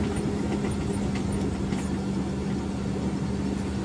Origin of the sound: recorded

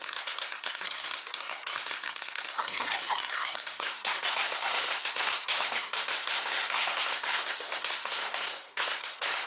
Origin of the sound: remade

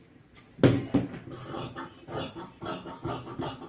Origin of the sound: recorded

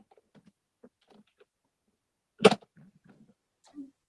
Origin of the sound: recorded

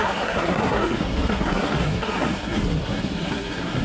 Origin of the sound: remade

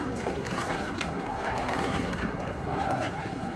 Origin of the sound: remade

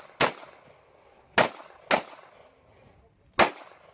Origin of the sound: recorded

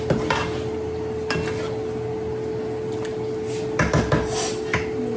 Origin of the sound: recorded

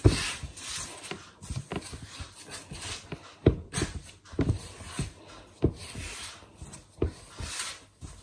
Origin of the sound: recorded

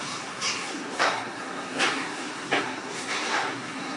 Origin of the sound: remade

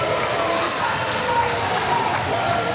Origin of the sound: recorded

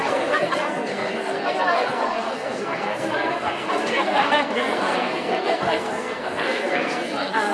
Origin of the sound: remade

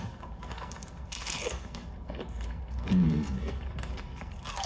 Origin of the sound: remade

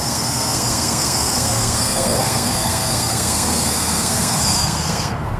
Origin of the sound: remade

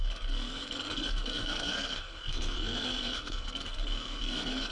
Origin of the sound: remade